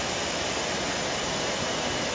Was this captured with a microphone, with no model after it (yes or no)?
yes